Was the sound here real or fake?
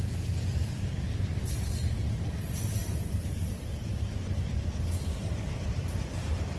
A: fake